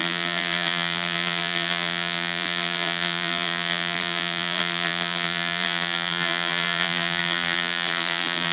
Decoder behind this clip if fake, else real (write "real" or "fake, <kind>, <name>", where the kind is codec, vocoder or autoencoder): fake, vocoder, BigVGAN v2